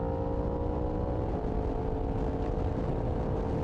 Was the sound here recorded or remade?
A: recorded